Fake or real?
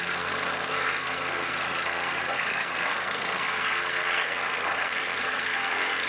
fake